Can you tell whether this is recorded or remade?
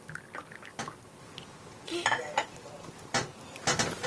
recorded